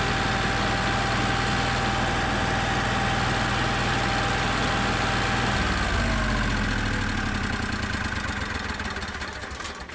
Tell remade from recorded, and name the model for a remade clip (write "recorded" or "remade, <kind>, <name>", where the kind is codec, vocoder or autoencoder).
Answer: recorded